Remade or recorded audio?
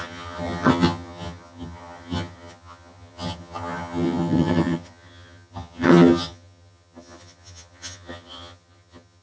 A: remade